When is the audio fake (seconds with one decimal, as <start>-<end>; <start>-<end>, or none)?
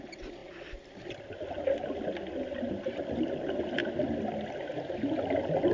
none